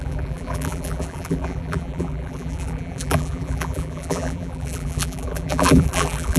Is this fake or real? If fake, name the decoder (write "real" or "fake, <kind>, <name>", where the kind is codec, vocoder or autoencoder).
fake, vocoder, BigVGAN v2